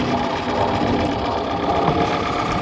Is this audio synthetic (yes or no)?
no